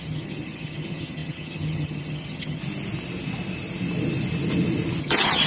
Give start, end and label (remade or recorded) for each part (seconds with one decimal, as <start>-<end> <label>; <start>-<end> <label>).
0.0-2.6 remade; 2.6-5.0 recorded; 5.0-5.5 remade